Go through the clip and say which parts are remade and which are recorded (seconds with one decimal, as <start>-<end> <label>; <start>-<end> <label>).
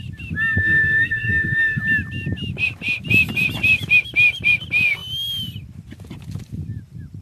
0.0-0.6 recorded; 0.6-1.8 remade; 1.8-7.2 recorded